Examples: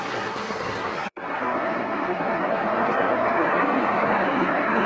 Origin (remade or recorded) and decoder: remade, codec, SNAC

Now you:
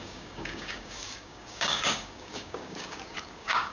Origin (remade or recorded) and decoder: remade, codec, DAC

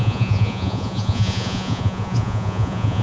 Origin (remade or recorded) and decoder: remade, vocoder, Vocos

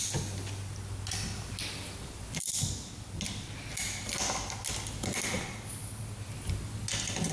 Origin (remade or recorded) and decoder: recorded